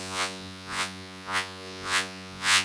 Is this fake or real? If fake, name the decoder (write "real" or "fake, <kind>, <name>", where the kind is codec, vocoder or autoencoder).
fake, vocoder, Vocos